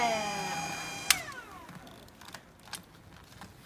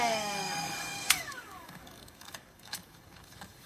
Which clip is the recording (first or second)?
first